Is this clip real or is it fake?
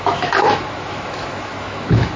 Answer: fake